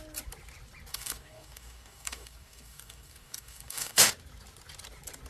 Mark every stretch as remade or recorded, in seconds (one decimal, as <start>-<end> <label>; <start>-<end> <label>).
0.0-0.9 recorded; 0.9-4.1 remade; 4.1-5.3 recorded